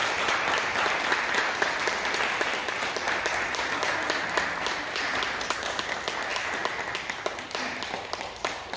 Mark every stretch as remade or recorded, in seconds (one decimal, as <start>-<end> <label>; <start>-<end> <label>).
0.0-8.8 recorded